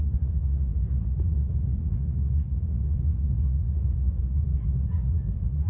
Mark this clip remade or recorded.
remade